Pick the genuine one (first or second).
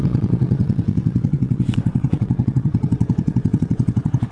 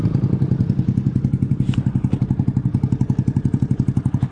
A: second